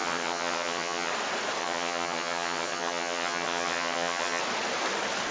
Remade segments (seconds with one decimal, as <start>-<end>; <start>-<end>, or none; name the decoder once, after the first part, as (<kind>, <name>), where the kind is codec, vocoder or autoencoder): 0.0-1.1 (vocoder, HiFi-GAN); 1.6-4.4